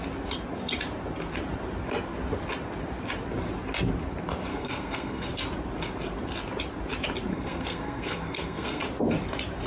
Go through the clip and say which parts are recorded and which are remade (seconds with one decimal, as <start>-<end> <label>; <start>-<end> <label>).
0.0-4.5 recorded; 4.5-5.3 remade; 5.3-7.3 recorded; 7.3-8.8 remade; 8.8-9.7 recorded